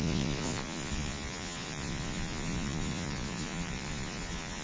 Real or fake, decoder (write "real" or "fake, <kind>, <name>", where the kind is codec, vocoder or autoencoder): fake, vocoder, Vocos